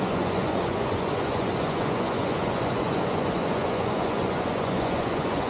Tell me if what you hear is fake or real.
fake